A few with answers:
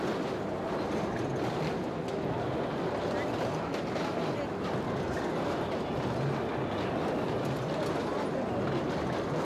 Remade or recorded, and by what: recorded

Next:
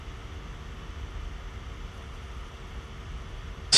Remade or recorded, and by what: recorded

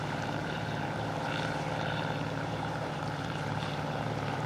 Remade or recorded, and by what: remade, vocoder, BigVGAN v2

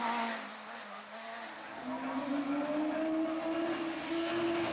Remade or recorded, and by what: recorded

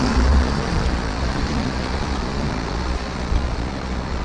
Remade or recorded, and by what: remade, vocoder, Vocos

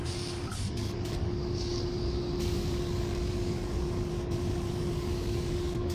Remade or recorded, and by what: remade, codec, DAC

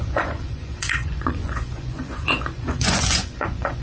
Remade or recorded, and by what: remade, vocoder, Vocos